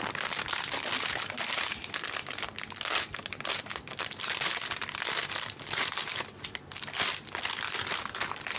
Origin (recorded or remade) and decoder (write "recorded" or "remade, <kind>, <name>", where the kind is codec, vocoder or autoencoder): recorded